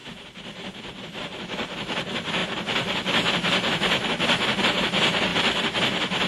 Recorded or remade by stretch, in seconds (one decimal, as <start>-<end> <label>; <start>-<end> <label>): 0.0-5.3 remade; 5.3-6.3 recorded

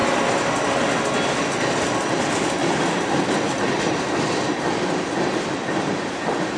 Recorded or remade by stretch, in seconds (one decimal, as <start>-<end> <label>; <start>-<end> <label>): 0.0-6.6 recorded